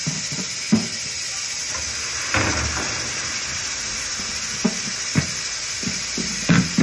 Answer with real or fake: real